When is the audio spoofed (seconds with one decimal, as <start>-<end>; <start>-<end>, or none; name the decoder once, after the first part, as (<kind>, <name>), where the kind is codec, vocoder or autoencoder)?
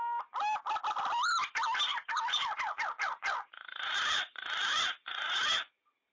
1.9-5.6 (vocoder, BigVGAN v2)